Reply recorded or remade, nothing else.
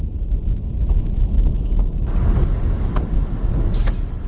recorded